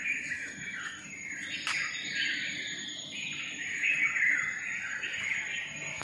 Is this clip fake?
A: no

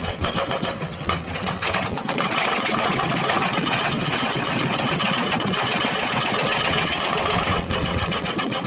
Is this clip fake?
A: yes